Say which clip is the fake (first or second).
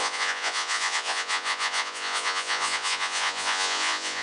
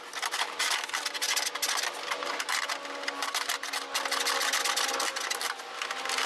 first